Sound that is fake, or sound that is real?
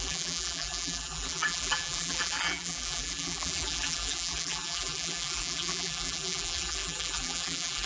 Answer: fake